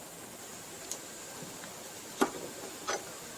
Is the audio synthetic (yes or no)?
no